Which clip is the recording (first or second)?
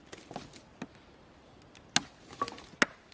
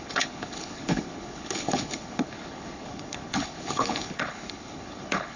first